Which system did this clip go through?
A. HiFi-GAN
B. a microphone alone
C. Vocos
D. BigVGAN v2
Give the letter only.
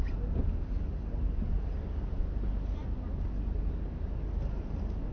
B